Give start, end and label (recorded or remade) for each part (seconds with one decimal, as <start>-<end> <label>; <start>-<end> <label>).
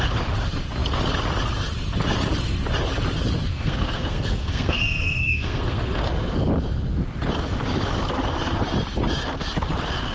0.0-3.5 recorded; 3.5-6.0 remade; 6.0-10.1 recorded